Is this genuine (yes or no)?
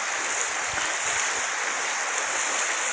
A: yes